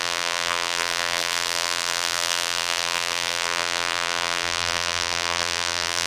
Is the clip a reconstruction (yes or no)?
yes